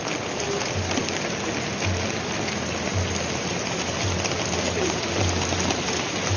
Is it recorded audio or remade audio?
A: recorded